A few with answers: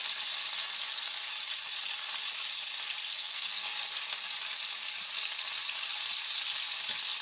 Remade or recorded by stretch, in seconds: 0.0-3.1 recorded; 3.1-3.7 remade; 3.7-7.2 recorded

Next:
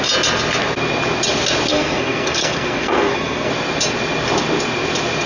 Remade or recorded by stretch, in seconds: 0.0-1.7 recorded; 1.7-3.5 remade; 3.5-5.3 recorded

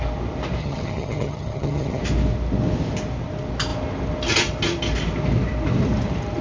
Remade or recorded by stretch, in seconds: 0.0-0.6 recorded; 0.6-2.0 remade; 2.0-6.4 recorded

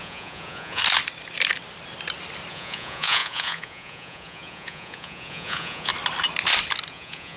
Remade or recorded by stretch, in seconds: 0.0-0.8 remade; 0.8-2.5 recorded; 2.5-5.9 remade; 5.9-6.9 recorded; 6.9-7.4 remade